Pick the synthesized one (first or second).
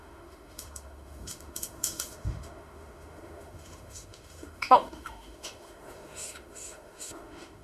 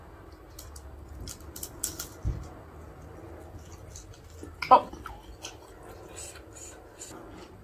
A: first